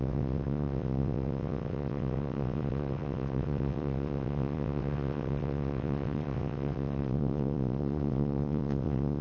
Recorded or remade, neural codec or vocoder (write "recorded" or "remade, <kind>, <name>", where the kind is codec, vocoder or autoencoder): remade, vocoder, WaveNeXt